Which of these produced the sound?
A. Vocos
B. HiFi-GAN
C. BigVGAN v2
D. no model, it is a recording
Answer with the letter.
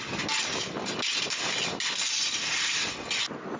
D